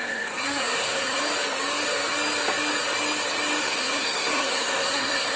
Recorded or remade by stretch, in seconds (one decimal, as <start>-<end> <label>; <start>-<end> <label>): 0.0-1.2 remade; 1.2-3.6 recorded; 3.6-5.4 remade